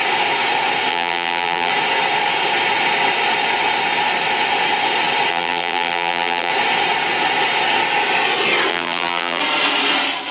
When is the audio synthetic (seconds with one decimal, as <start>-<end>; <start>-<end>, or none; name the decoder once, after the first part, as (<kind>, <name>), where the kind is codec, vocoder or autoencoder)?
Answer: 0.9-1.7 (vocoder, BigVGAN v2); 5.3-6.5; 8.7-9.4